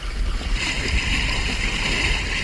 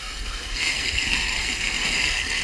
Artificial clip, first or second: second